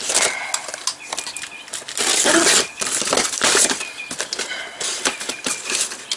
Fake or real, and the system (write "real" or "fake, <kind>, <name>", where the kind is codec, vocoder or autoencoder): real